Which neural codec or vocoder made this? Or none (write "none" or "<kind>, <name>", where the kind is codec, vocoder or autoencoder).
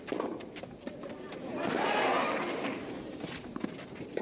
none